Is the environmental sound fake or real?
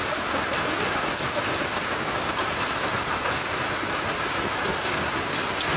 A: real